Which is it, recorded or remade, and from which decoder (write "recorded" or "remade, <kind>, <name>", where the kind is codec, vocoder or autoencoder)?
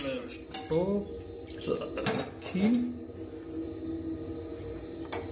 recorded